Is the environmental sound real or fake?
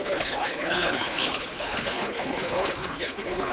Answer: fake